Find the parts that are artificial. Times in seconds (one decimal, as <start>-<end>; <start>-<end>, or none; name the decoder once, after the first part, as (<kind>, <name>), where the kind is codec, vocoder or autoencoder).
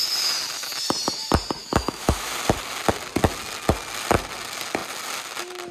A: 1.6-2.3 (autoencoder, DAC-VAE)